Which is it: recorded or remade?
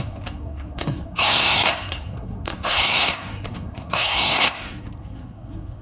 remade